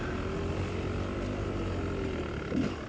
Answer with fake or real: real